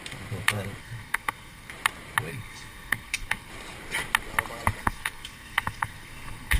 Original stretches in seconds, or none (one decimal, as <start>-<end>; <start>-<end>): 0.0-0.8; 1.7-2.3; 3.5-4.8